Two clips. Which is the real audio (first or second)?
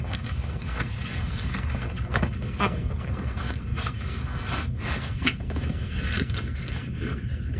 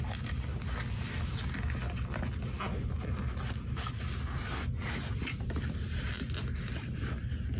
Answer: second